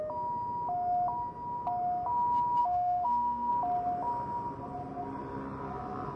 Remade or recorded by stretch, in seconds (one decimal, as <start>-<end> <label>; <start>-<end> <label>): 0.0-2.6 recorded; 2.6-3.5 remade; 3.5-6.2 recorded